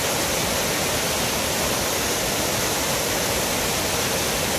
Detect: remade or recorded recorded